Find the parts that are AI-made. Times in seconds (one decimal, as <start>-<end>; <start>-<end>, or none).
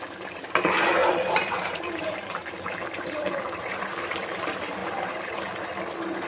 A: 1.0-3.9; 4.8-5.3